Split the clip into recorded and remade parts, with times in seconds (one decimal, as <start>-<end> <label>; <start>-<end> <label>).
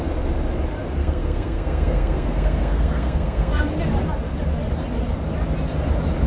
0.0-1.0 recorded; 1.0-3.7 remade; 3.7-6.3 recorded